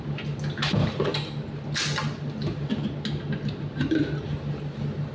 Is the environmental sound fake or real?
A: real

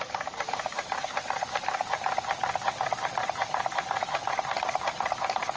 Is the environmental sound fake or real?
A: fake